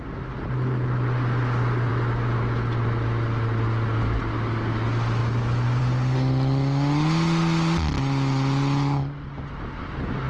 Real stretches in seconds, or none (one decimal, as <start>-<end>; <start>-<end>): 0.0-10.3